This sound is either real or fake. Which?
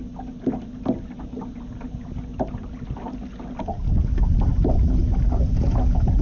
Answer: real